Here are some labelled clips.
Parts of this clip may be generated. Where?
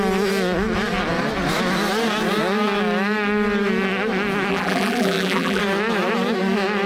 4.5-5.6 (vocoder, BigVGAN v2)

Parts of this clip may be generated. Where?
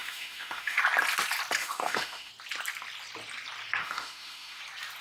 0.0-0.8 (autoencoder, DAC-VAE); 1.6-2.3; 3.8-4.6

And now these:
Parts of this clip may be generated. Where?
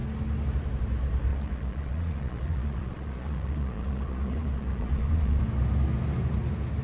1.3-5.4 (vocoder, Vocos)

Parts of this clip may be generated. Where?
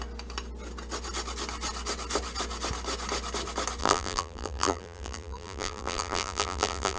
3.8-7.0 (vocoder, BigVGAN v2)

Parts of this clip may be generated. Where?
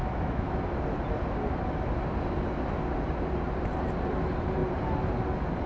0.0-0.6 (autoencoder, DAC-VAE)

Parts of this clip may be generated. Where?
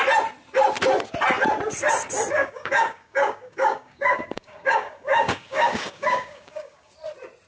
2.4-6.9 (codec, DAC)